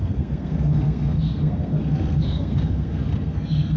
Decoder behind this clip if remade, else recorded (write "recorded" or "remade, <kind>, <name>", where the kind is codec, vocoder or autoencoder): remade, codec, SNAC